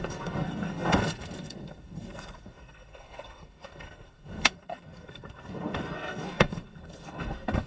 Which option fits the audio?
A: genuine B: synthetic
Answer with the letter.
B